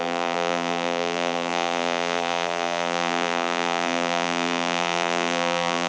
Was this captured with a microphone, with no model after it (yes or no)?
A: no